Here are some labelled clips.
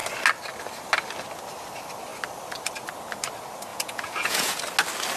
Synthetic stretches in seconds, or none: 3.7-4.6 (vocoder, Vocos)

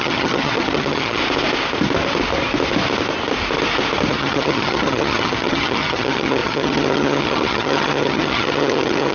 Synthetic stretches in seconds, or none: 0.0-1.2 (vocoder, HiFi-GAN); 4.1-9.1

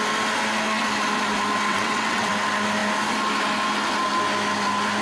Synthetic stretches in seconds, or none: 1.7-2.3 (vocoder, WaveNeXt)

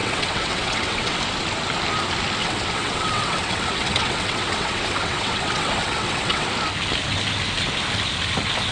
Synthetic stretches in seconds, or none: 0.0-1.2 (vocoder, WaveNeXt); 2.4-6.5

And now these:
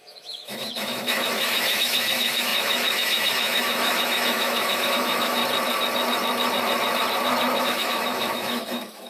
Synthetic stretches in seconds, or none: 0.0-5.4 (autoencoder, DAC-VAE); 7.6-9.1

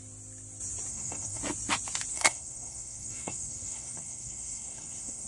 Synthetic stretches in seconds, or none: 0.9-1.4 (codec, SNAC); 2.1-5.3

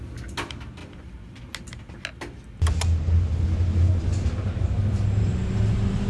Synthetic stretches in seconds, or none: none